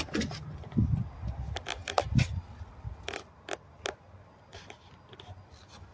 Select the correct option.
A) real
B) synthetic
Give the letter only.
A